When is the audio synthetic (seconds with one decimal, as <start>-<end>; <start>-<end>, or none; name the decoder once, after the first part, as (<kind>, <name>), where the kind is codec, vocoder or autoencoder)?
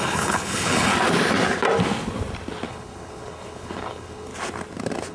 0.0-0.9 (codec, HILCodec); 2.7-4.3